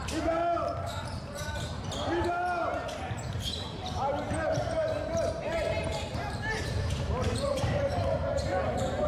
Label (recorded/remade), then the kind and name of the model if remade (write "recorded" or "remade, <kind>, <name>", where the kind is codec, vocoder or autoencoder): remade, vocoder, BigVGAN v2